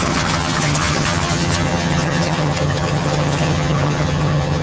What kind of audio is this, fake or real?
fake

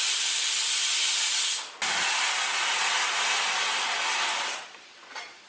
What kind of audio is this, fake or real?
real